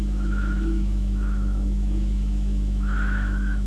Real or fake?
fake